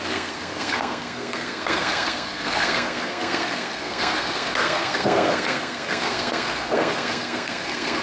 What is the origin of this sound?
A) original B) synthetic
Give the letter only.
B